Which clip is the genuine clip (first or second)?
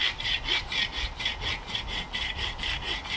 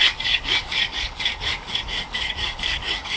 first